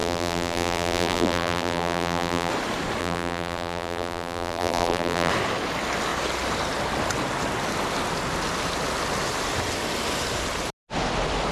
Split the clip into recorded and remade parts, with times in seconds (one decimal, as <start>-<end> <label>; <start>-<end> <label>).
0.0-2.5 remade; 2.5-3.0 recorded; 3.0-5.3 remade; 5.3-11.5 recorded